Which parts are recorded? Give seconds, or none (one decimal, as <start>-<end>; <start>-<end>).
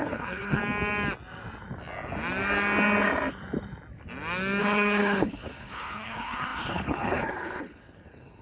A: 0.6-4.6